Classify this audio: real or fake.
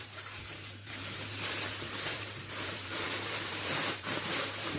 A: fake